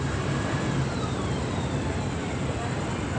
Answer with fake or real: real